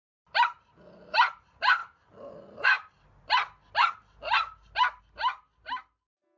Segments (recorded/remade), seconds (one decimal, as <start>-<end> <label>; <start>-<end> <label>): 0.0-6.4 recorded